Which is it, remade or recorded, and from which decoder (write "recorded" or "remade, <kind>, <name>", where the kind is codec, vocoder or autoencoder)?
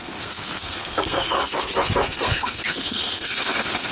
remade, codec, SNAC